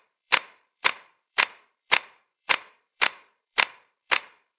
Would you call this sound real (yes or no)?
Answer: no